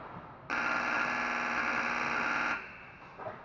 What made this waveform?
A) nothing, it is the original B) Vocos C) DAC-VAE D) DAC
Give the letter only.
A